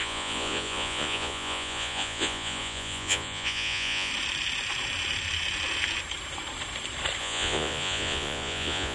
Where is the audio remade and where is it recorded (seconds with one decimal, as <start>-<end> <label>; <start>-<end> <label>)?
0.0-4.1 remade; 4.1-7.2 recorded; 7.2-8.9 remade